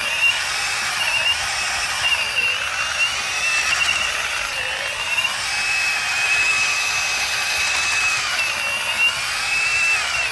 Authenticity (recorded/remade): recorded